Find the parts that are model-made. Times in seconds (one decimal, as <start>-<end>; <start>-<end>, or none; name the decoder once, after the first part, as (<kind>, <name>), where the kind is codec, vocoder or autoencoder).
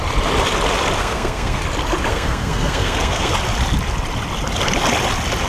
1.0-1.6 (codec, SNAC); 2.1-3.3